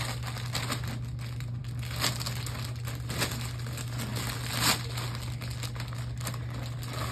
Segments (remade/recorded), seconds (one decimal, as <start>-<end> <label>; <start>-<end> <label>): 0.0-7.1 recorded